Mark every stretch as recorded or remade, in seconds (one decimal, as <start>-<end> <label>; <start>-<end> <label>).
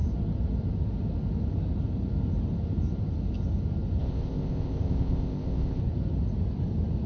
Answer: 0.0-4.0 recorded; 4.0-5.8 remade; 5.8-7.1 recorded